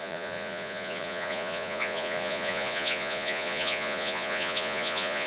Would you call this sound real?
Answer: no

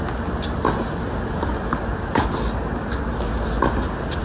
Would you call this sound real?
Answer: yes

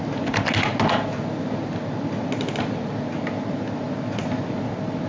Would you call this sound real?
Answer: yes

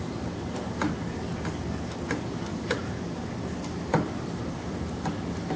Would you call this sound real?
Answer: yes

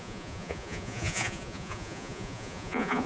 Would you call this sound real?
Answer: no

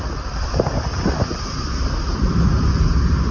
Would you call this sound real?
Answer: yes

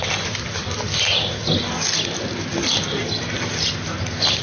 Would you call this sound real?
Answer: yes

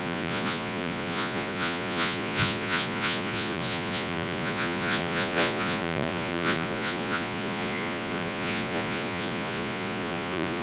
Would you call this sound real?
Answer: no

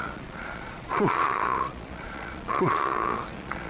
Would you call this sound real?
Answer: no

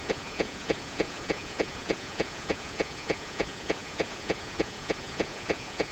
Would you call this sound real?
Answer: no